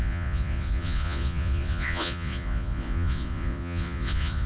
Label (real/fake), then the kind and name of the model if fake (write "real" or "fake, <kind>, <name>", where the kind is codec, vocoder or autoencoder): fake, vocoder, Vocos